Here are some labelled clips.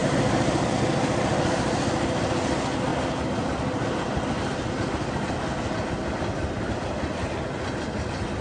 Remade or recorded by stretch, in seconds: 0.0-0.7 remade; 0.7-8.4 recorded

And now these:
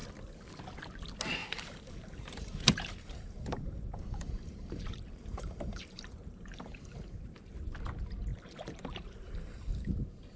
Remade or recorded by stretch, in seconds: 0.0-1.4 recorded; 1.4-6.7 remade; 6.7-8.3 recorded; 8.3-9.3 remade; 9.3-10.4 recorded

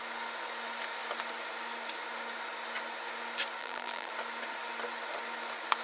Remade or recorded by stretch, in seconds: 0.0-3.6 recorded; 3.6-4.1 remade; 4.1-5.8 recorded

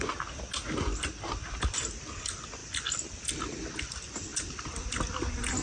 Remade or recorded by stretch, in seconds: 0.0-5.6 recorded

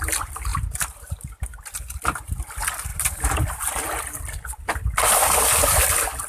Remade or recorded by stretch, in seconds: 0.0-2.9 recorded; 2.9-3.8 remade; 3.8-6.3 recorded

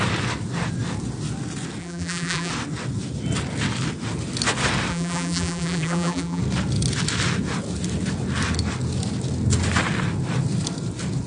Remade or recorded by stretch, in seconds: 0.0-1.8 recorded; 1.8-2.5 remade; 2.5-4.9 recorded; 4.9-6.4 remade; 6.4-11.3 recorded